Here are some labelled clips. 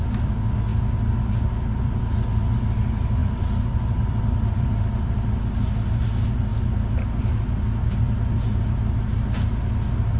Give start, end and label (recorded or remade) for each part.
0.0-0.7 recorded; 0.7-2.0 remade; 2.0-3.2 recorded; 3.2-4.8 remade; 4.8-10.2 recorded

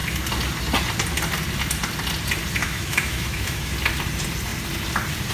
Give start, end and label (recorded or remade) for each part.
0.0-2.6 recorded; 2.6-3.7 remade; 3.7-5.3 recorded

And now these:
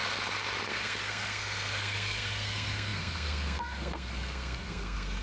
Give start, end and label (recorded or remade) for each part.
0.0-0.7 recorded; 0.7-5.2 remade